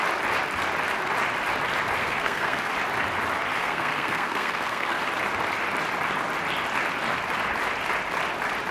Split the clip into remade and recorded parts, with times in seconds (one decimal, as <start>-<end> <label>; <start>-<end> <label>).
0.0-2.0 recorded; 2.0-2.7 remade; 2.7-3.6 recorded; 3.6-5.0 remade; 5.0-8.7 recorded